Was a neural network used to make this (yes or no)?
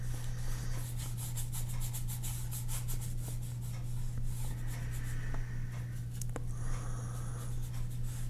no